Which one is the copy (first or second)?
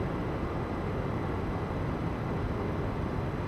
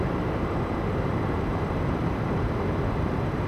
second